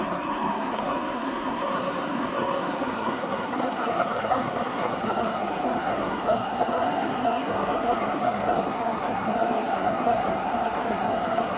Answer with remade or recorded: remade